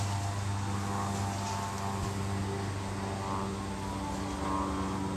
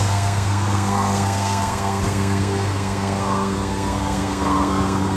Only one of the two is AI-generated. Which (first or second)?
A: second